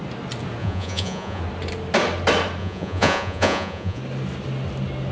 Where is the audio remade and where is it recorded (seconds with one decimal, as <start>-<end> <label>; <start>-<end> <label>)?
0.0-0.6 recorded; 0.6-1.4 remade; 1.4-2.6 recorded; 2.6-4.0 remade; 4.0-5.1 recorded